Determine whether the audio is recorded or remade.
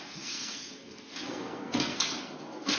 remade